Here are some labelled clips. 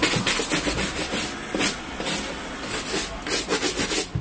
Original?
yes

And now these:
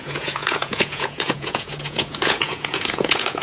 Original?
no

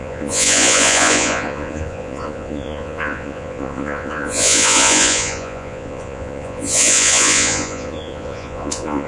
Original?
no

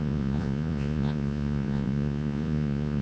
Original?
no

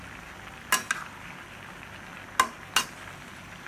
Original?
yes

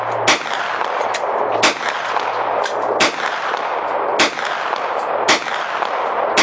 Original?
yes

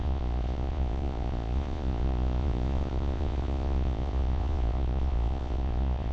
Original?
no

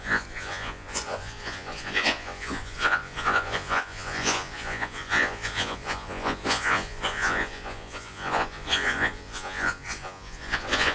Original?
no